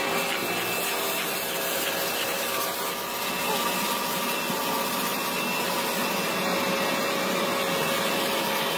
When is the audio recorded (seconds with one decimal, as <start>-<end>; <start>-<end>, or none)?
0.0-8.8